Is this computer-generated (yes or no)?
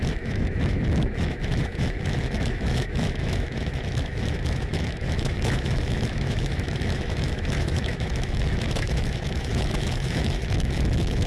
yes